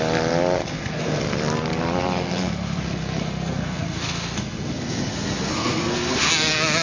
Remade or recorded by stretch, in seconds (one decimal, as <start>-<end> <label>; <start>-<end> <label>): 0.0-0.6 recorded; 0.6-1.2 remade; 1.2-2.2 recorded; 2.2-6.3 remade; 6.3-6.8 recorded